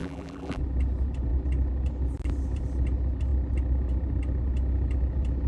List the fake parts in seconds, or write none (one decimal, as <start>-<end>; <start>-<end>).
0.0-0.6